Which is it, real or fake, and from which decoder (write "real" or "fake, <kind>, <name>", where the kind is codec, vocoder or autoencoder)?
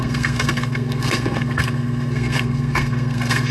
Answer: fake, codec, SNAC